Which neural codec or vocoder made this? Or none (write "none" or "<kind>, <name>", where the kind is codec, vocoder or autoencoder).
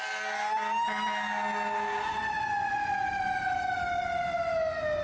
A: none